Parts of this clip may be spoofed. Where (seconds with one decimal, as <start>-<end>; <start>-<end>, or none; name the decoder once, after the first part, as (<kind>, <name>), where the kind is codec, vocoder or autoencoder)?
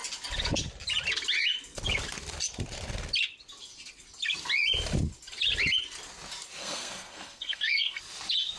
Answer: 6.6-8.0 (codec, SNAC)